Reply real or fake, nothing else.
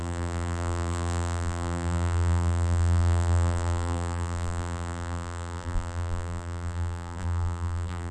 fake